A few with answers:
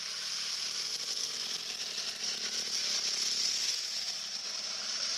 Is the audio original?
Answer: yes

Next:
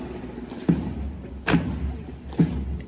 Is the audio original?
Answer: yes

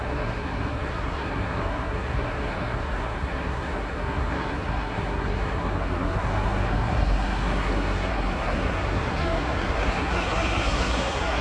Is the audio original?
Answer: no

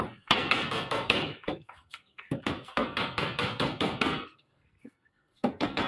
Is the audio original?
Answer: no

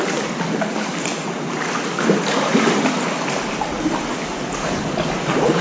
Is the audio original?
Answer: yes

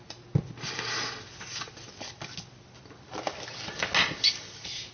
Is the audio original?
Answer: yes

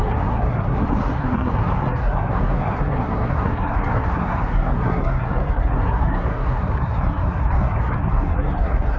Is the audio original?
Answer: no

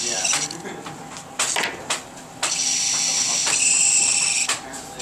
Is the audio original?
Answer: yes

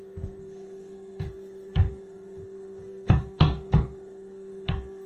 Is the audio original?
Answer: no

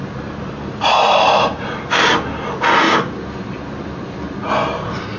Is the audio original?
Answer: yes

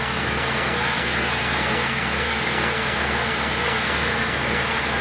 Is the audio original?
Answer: no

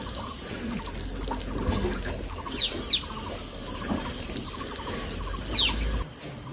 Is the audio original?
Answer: yes